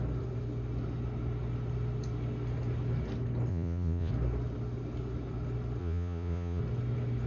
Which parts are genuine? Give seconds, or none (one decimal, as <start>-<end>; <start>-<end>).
0.0-3.5; 4.1-5.8; 6.6-7.3